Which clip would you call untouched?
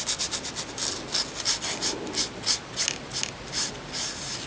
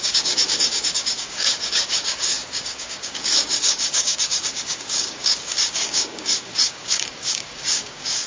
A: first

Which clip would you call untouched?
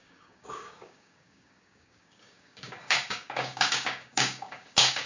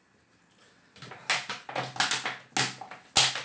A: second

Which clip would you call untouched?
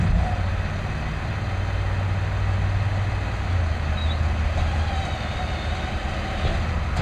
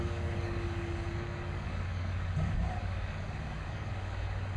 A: first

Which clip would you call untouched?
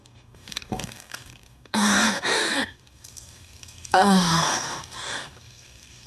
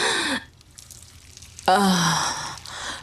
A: second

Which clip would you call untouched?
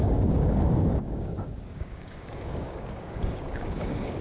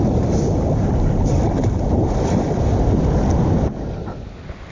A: second